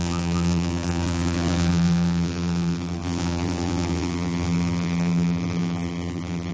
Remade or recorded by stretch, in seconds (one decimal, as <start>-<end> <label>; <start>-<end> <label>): 0.0-6.5 remade